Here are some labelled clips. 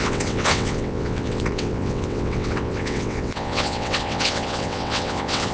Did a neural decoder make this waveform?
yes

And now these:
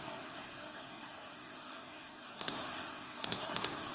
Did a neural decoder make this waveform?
yes